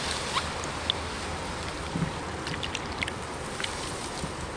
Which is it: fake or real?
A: real